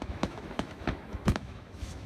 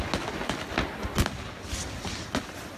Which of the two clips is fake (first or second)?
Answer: first